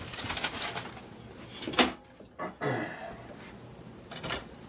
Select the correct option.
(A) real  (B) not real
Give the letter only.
A